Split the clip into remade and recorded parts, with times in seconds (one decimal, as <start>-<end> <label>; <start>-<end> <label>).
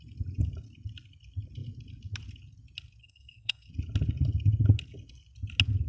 0.0-3.0 recorded; 3.0-3.7 remade; 3.7-5.9 recorded